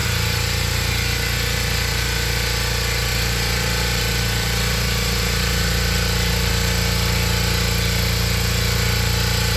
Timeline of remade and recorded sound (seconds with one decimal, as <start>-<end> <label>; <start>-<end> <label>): 0.0-0.9 remade; 0.9-3.1 recorded; 3.1-6.5 remade; 6.5-9.6 recorded